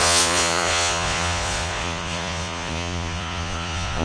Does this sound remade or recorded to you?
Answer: remade